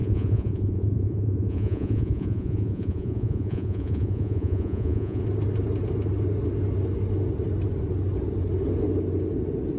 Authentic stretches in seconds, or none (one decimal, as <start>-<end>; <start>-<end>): 5.2-9.8